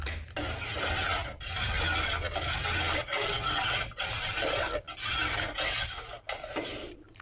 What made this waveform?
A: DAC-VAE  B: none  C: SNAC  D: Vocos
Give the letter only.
B